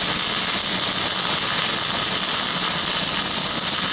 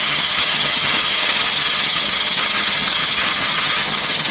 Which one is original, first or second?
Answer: first